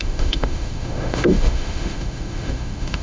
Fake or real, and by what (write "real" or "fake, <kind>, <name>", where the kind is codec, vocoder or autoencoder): fake, autoencoder, DAC-VAE